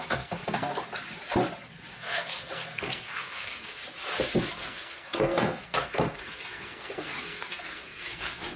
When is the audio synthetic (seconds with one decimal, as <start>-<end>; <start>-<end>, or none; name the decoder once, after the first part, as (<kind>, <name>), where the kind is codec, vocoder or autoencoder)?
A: 0.0-0.7 (codec, SNAC); 1.9-3.8; 4.5-8.6